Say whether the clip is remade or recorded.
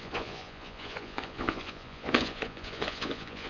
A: remade